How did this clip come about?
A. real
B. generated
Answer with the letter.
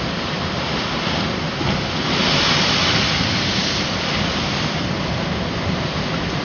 A